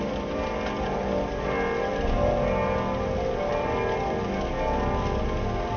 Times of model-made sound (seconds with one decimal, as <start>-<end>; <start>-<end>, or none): none